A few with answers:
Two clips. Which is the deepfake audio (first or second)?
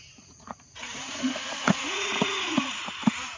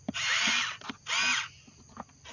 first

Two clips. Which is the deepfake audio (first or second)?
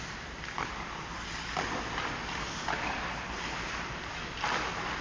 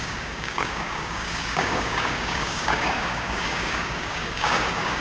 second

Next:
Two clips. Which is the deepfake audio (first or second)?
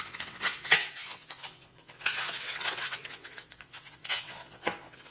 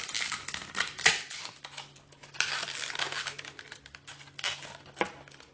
first